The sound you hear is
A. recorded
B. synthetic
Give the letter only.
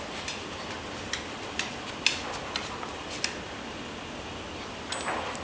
A